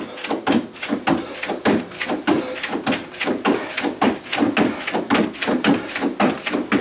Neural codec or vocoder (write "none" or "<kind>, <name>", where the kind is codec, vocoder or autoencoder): none